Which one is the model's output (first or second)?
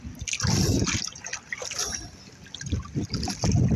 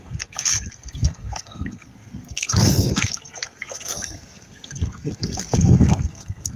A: second